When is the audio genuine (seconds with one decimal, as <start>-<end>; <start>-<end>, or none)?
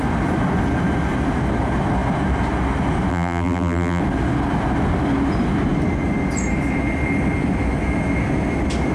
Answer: 0.0-3.1; 4.0-8.9